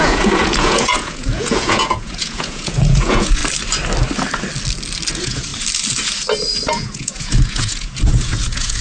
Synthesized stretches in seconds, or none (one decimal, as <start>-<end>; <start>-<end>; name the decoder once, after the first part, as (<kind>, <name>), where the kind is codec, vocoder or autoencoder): 0.0-3.4 (vocoder, Vocos); 5.1-5.5; 6.7-8.8